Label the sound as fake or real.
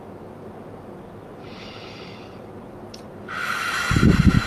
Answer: real